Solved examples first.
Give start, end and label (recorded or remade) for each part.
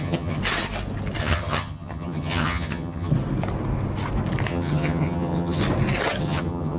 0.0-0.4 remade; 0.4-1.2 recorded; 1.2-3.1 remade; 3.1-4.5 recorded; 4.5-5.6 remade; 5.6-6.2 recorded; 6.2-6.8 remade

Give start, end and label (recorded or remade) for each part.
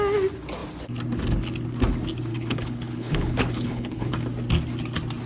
0.0-2.3 recorded; 2.3-4.1 remade; 4.1-5.3 recorded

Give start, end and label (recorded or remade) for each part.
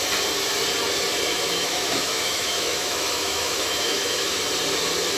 0.0-1.3 recorded; 1.3-4.4 remade; 4.4-5.2 recorded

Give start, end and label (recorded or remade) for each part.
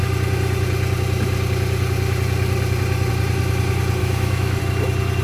0.0-4.0 recorded; 4.0-4.6 remade; 4.6-5.2 recorded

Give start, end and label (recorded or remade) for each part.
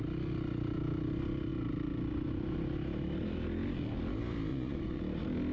0.0-4.5 recorded; 4.5-5.0 remade; 5.0-5.5 recorded